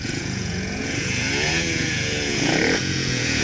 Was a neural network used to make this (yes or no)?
yes